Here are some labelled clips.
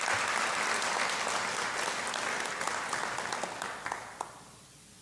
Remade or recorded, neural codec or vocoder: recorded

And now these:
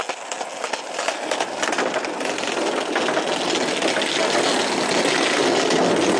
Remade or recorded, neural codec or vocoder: recorded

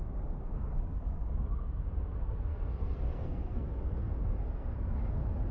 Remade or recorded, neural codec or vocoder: remade, codec, SNAC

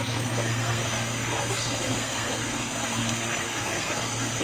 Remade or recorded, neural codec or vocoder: remade, codec, SNAC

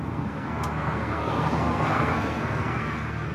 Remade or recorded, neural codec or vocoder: remade, codec, SNAC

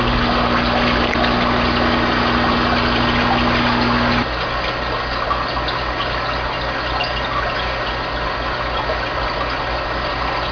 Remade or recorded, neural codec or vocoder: recorded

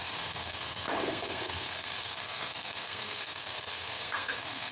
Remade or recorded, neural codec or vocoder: remade, codec, SNAC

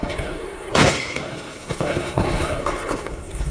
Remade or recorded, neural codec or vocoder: remade, codec, SNAC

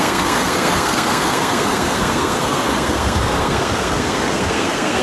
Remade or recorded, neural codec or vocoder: remade, codec, SNAC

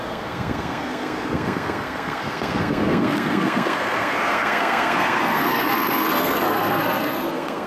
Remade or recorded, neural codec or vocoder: remade, codec, SNAC